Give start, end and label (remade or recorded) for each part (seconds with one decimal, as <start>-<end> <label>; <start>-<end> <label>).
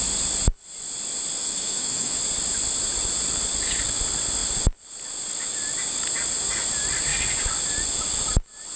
0.0-1.4 recorded; 1.4-2.2 remade; 2.2-8.8 recorded